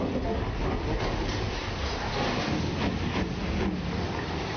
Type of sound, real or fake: real